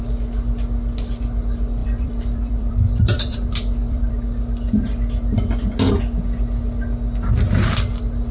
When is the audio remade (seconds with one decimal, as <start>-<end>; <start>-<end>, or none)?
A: 1.8-4.1